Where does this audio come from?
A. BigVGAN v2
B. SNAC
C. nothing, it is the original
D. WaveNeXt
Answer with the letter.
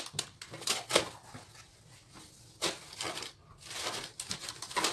C